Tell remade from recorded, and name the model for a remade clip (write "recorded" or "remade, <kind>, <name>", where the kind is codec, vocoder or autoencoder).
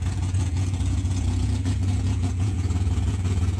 remade, vocoder, Vocos